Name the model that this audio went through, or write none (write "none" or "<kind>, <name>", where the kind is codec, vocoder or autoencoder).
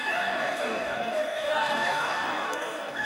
codec, DAC